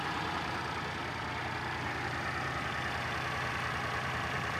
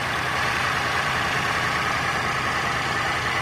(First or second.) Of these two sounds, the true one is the first